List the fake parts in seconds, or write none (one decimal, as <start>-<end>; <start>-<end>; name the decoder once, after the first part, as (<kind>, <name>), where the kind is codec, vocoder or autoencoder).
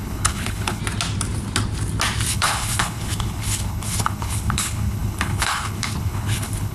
0.0-0.8 (codec, HILCodec); 2.3-6.7